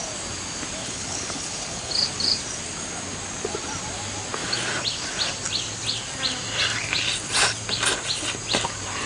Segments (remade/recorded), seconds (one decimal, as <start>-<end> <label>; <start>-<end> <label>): 0.0-0.8 recorded; 0.8-1.9 remade; 1.9-9.1 recorded